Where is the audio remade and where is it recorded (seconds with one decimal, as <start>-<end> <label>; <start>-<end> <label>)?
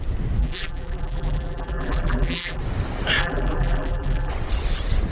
0.0-0.4 recorded; 0.4-2.6 remade; 2.6-3.2 recorded; 3.2-4.3 remade; 4.3-5.1 recorded